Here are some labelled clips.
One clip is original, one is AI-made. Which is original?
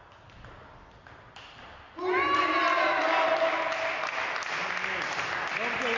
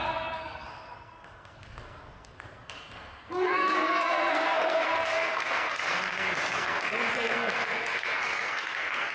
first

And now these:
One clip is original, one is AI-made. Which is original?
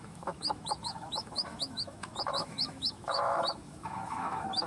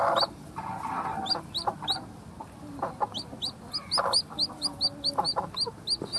second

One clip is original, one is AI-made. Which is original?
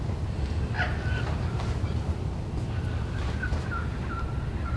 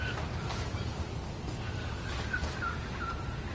second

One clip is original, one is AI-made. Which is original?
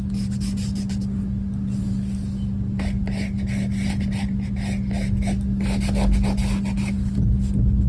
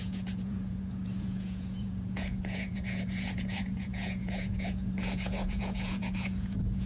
first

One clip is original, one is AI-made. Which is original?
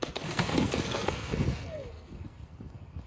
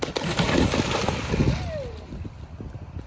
second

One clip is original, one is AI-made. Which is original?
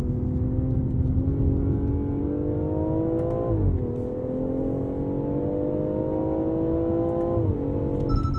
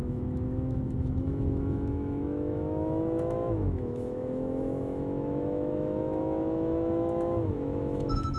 first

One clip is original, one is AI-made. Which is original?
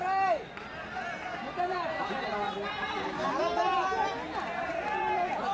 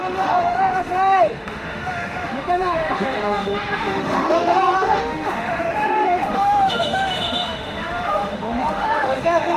first